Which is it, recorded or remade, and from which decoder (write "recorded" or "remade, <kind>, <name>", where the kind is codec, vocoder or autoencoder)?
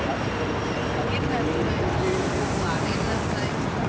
recorded